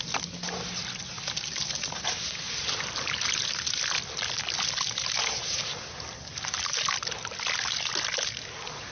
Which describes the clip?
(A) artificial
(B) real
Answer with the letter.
B